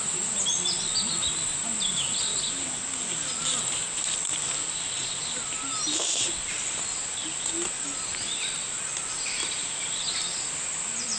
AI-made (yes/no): no